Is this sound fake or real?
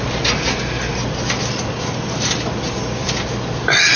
real